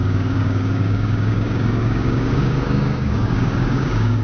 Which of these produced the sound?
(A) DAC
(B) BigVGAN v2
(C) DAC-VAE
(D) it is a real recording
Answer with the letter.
A